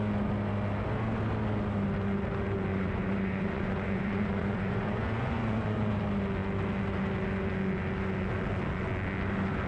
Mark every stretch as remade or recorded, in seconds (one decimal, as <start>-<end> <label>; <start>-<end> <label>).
0.0-2.7 recorded; 2.7-5.9 remade; 5.9-9.7 recorded